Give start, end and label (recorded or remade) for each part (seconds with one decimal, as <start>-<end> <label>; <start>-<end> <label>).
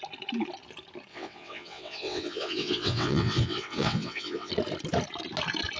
0.0-1.1 recorded; 1.1-4.5 remade; 4.5-5.8 recorded